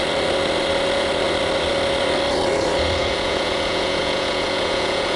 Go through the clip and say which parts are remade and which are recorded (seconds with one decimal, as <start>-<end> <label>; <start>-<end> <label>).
0.0-3.0 recorded; 3.0-5.2 remade

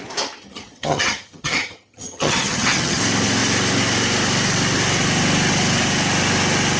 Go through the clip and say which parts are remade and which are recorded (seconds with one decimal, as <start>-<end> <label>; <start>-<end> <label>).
0.0-0.4 recorded; 0.4-3.0 remade; 3.0-6.8 recorded

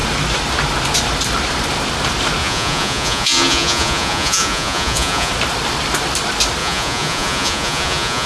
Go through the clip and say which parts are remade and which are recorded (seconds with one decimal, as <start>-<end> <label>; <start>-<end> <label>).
0.0-2.4 recorded; 2.4-5.3 remade; 5.3-6.6 recorded; 6.6-8.3 remade

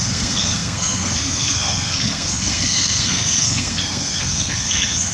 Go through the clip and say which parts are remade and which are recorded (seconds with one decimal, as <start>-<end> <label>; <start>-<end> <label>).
0.0-5.1 remade

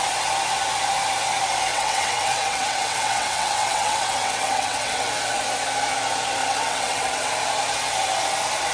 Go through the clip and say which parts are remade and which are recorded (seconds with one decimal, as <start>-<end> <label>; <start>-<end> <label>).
0.0-1.7 recorded; 1.7-5.1 remade; 5.1-6.4 recorded; 6.4-7.3 remade; 7.3-8.7 recorded

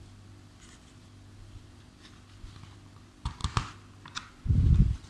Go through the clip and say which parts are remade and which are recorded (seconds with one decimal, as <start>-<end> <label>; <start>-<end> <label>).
0.0-5.1 recorded

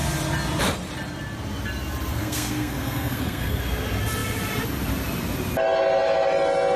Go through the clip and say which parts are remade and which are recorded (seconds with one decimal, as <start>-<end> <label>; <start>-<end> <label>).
0.0-2.1 recorded; 2.1-3.6 remade; 3.6-6.8 recorded